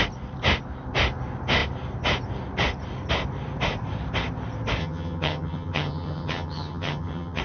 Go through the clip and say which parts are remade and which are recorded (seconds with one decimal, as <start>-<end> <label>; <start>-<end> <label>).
0.0-4.8 recorded; 4.8-7.4 remade